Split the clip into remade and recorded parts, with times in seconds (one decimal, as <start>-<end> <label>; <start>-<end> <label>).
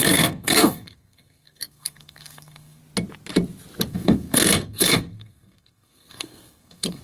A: 0.0-2.8 remade; 2.8-3.9 recorded; 3.9-7.0 remade